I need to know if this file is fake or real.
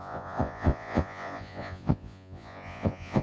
fake